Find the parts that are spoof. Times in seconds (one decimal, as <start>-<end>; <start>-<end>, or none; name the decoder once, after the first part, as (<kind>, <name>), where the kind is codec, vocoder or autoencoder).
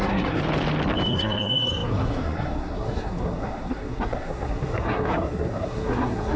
0.0-0.4 (codec, SNAC); 1.1-6.4